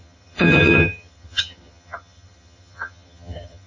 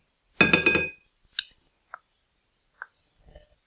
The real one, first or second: second